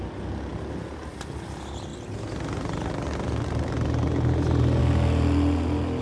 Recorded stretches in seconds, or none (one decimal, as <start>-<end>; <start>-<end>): 0.0-6.0